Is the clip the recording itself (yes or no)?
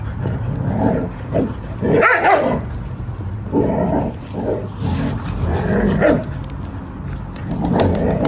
yes